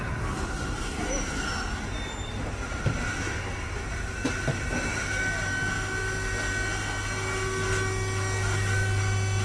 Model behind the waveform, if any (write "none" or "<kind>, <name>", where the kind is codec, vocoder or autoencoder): none